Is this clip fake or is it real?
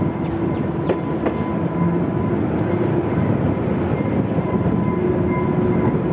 real